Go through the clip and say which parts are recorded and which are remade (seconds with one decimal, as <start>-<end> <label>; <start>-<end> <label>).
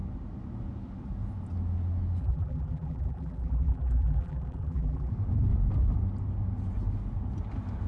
0.0-2.2 recorded; 2.2-5.1 remade; 5.1-7.9 recorded